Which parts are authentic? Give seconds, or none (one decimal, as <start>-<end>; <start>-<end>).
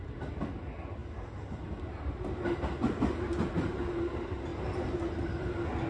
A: 0.0-5.9